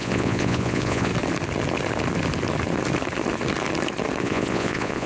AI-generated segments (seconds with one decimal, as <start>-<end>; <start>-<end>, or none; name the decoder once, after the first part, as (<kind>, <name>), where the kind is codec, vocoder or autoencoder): 0.0-1.1 (vocoder, Vocos); 4.2-5.1